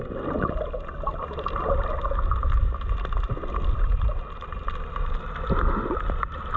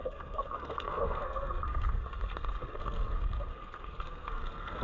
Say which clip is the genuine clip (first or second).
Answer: first